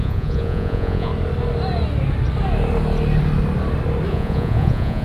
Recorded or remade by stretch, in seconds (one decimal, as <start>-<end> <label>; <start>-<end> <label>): 0.0-1.1 remade; 1.1-4.1 recorded; 4.1-5.0 remade